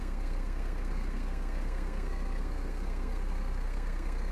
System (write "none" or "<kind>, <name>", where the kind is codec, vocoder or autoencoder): codec, SNAC